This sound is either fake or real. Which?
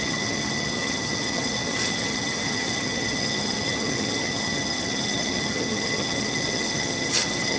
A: fake